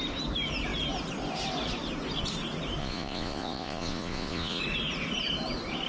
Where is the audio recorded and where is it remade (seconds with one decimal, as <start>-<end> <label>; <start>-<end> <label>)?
0.0-2.8 recorded; 2.8-4.6 remade; 4.6-5.9 recorded